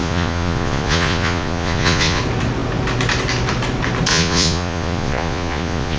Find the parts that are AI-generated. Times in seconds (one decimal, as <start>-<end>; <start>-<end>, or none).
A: 0.0-2.2; 4.1-6.0